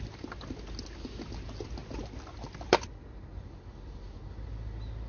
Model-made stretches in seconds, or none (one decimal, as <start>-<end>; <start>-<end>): none